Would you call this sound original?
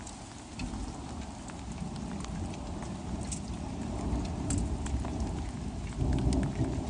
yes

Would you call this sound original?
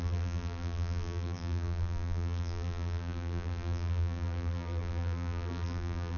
no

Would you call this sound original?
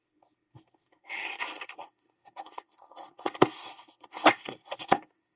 no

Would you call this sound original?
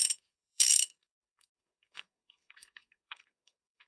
no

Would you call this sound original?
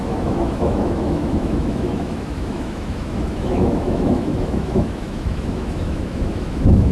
no